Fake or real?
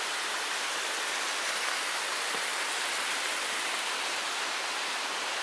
real